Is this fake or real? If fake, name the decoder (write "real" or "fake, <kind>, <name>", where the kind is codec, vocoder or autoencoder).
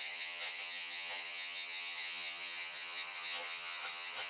fake, vocoder, HiFi-GAN